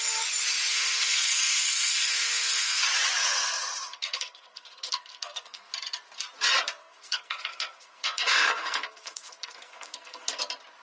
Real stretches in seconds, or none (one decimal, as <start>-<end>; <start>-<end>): 0.0-0.7; 2.8-3.9; 5.7-6.8; 10.4-10.8